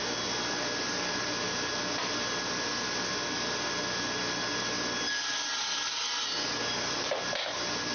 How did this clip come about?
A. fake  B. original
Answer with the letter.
B